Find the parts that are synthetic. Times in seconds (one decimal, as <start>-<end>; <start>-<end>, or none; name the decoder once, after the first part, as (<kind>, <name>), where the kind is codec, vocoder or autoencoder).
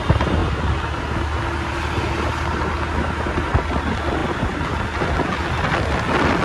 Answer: none